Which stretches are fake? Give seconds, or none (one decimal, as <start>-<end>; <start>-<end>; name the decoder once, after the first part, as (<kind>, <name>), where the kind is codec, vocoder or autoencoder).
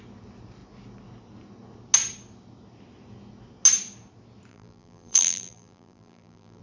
4.5-6.6 (vocoder, BigVGAN v2)